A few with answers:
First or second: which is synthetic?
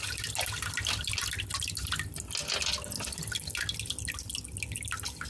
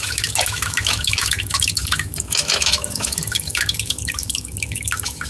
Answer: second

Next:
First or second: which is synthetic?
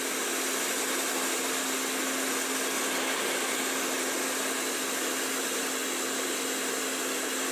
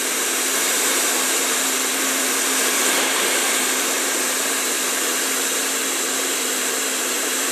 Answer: second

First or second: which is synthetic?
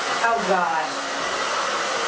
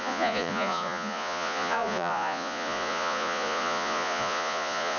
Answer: second